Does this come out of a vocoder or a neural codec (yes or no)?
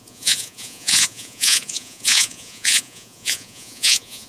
yes